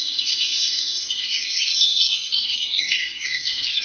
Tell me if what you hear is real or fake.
fake